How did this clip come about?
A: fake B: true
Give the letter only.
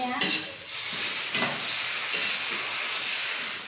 B